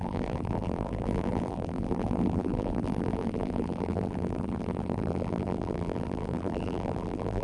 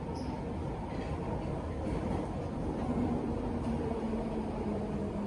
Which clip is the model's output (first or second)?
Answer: first